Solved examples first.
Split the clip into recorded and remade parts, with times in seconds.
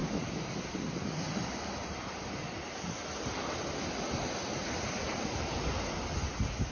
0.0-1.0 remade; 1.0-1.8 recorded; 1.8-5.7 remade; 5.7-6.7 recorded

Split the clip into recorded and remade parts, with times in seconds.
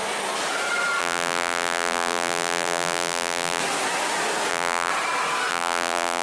0.0-1.0 recorded; 1.0-3.6 remade; 3.6-4.5 recorded; 4.5-4.9 remade; 4.9-5.5 recorded; 5.5-6.2 remade